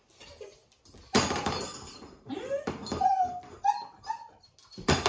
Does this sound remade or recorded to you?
recorded